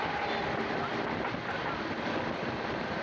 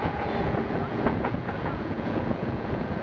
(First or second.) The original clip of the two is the first